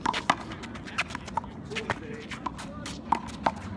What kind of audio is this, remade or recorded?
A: recorded